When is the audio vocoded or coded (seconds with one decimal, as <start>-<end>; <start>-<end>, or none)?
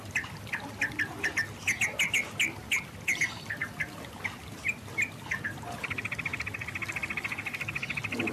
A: none